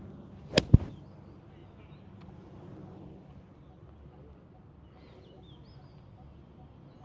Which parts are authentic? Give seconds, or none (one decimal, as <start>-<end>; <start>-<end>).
0.0-7.0